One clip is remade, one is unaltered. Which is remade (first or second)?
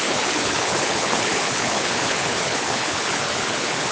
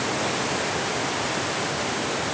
first